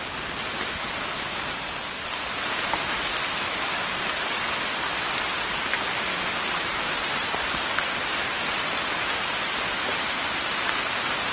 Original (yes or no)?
yes